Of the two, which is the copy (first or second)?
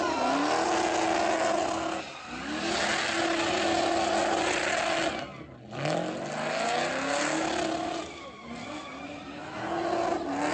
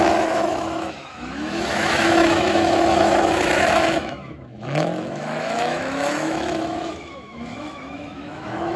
second